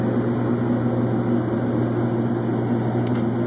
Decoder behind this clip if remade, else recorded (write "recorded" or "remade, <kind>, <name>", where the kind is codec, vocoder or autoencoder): recorded